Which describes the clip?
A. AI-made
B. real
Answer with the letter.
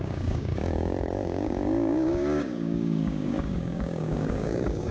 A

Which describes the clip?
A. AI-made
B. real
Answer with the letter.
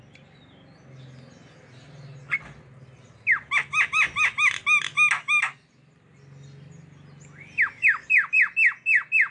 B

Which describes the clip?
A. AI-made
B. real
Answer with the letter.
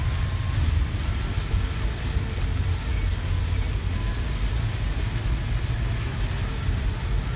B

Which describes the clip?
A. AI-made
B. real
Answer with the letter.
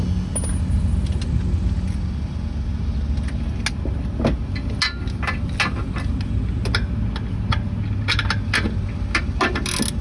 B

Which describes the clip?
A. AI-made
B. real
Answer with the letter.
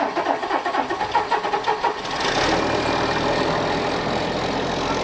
B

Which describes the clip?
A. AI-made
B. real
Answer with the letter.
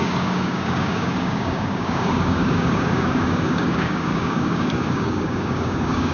A